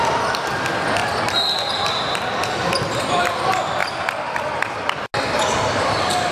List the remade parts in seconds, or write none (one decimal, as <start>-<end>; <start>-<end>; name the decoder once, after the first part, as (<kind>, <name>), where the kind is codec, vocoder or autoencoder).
none